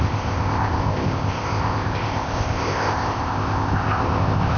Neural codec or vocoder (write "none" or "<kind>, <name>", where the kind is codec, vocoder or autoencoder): codec, ZipCodec